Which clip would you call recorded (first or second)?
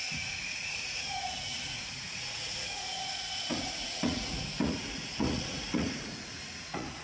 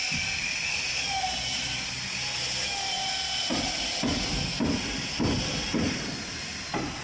second